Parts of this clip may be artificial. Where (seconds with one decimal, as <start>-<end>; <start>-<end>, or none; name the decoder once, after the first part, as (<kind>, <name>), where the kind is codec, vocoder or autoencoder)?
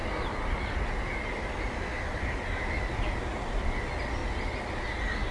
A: none